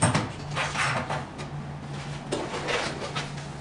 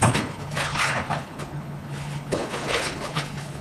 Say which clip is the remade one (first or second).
second